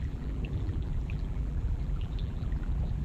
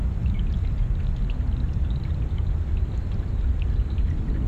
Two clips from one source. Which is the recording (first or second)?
second